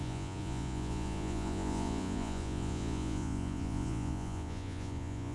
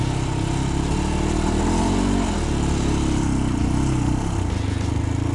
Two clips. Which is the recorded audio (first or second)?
second